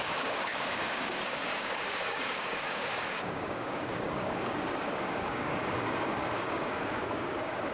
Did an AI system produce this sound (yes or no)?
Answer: yes